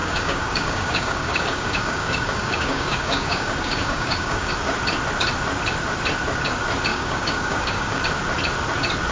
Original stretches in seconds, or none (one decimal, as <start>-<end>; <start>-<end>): 4.5-6.9; 8.0-9.1